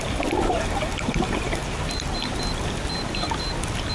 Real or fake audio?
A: real